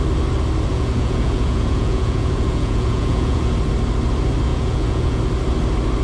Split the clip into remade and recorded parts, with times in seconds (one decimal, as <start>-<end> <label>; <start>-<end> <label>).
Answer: 0.0-0.7 recorded; 0.7-3.4 remade; 3.4-4.5 recorded; 4.5-5.2 remade; 5.2-6.0 recorded